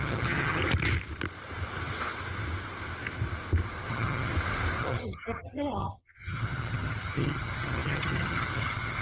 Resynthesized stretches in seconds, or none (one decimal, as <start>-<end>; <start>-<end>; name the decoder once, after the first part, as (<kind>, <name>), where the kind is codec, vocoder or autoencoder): 0.0-0.6 (vocoder, HiFi-GAN); 3.9-4.3; 4.8-9.0